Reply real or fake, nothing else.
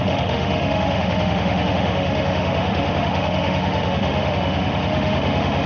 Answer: fake